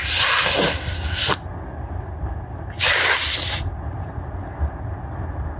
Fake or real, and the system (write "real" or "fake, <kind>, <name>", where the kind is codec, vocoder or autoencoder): real